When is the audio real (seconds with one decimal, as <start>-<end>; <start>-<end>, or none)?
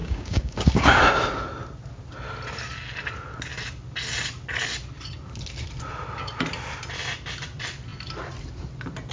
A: 1.0-9.1